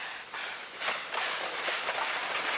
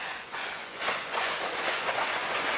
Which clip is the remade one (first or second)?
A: second